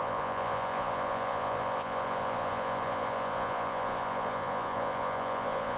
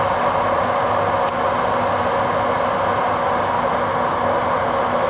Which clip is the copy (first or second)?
first